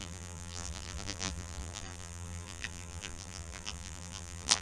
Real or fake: fake